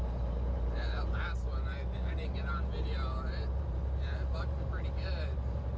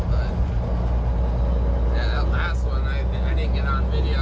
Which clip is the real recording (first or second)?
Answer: second